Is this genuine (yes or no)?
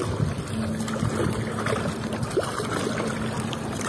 yes